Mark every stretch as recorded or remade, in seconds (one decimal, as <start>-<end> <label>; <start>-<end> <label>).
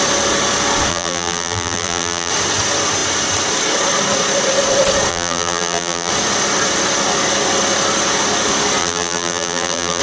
0.0-0.9 recorded; 0.9-2.3 remade; 2.3-5.1 recorded; 5.1-6.1 remade; 6.1-8.8 recorded; 8.8-10.0 remade